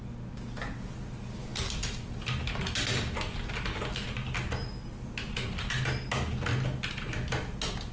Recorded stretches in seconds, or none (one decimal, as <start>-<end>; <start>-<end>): 0.0-7.9